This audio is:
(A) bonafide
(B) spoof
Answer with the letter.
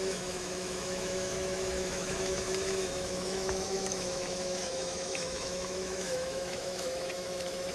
B